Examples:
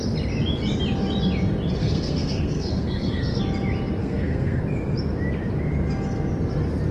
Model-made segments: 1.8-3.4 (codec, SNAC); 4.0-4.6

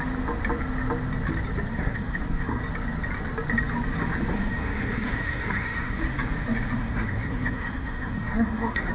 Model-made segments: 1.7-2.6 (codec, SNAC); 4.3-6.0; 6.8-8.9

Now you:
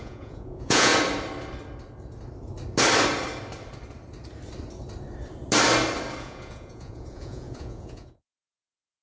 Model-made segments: 0.0-0.9 (vocoder, Vocos); 6.2-9.0

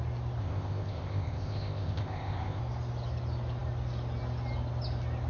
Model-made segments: 0.4-2.6 (codec, ZipCodec)

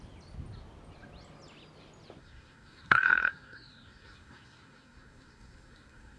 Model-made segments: 2.2-6.2 (codec, SNAC)

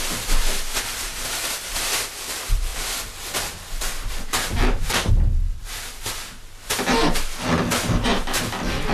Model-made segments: none

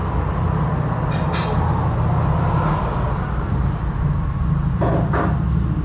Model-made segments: none

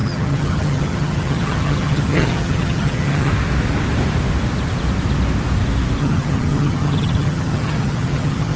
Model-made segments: 0.0-3.3 (vocoder, HiFi-GAN); 6.0-8.6